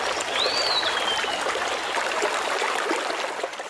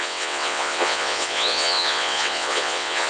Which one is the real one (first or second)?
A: first